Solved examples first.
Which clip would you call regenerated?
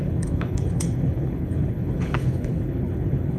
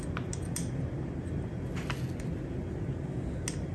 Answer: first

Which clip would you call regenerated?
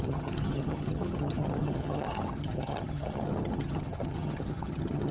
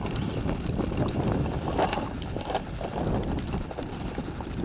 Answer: first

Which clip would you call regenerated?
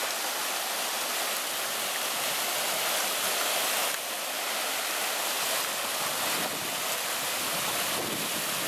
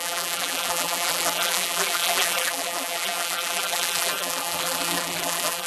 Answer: second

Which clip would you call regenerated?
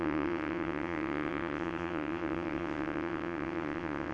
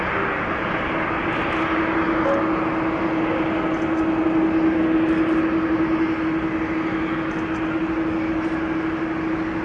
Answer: first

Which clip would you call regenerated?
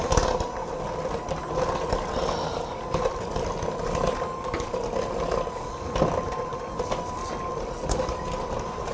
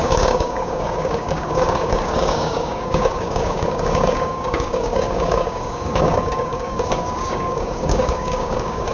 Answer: second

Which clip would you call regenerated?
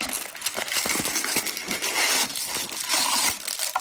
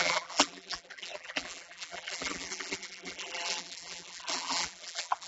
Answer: second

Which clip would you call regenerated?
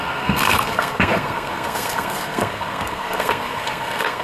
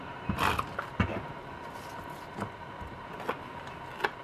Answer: first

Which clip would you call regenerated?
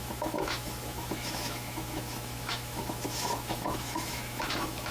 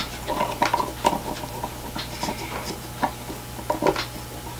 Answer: first